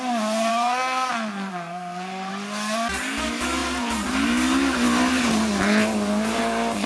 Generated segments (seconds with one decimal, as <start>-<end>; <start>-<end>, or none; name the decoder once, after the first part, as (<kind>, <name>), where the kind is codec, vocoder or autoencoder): 0.5-1.1 (codec, SNAC); 1.5-2.3